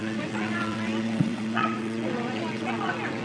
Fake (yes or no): yes